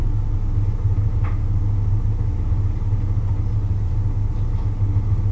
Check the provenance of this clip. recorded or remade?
recorded